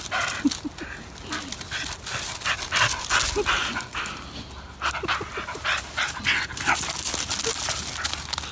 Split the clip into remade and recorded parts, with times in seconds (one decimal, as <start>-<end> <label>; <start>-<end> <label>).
0.0-5.3 recorded; 5.3-6.2 remade; 6.2-8.5 recorded